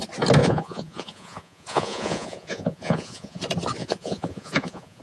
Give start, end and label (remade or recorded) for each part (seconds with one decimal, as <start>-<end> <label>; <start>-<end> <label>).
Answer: 0.0-0.4 recorded; 0.4-3.4 remade; 3.4-3.8 recorded; 3.8-5.0 remade